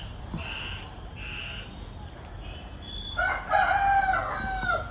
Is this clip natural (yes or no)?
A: yes